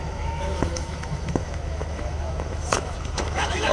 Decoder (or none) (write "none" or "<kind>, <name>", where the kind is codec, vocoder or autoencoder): autoencoder, DAC-VAE